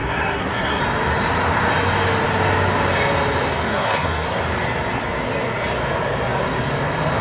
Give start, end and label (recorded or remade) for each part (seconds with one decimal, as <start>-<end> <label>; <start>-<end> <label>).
0.0-0.8 remade; 0.8-3.7 recorded; 3.7-4.4 remade; 4.4-7.2 recorded